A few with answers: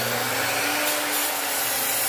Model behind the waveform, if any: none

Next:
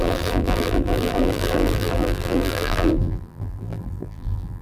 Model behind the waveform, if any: vocoder, BigVGAN v2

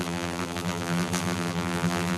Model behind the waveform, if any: vocoder, BigVGAN v2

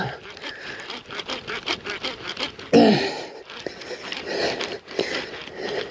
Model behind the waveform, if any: vocoder, BigVGAN v2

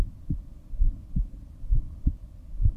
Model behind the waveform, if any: none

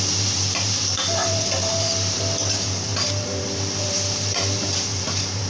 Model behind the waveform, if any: vocoder, BigVGAN v2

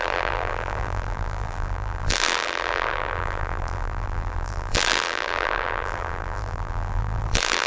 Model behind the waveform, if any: vocoder, BigVGAN v2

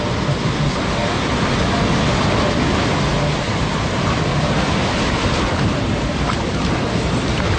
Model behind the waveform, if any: vocoder, BigVGAN v2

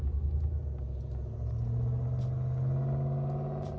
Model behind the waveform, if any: none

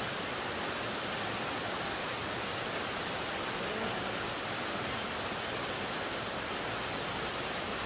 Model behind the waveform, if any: none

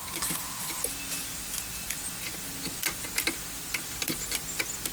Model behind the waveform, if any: none